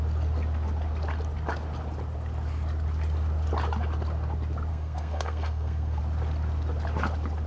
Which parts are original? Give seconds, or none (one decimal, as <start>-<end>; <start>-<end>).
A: 0.0-4.7; 6.0-7.5